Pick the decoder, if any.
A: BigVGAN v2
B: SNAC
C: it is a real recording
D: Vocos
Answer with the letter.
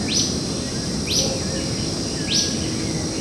C